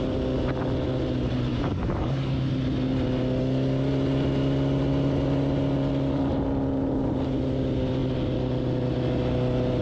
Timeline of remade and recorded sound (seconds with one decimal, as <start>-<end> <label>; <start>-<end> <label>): 0.0-1.5 recorded; 1.5-2.5 remade; 2.5-9.8 recorded